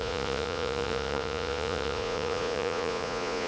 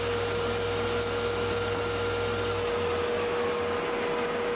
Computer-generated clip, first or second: first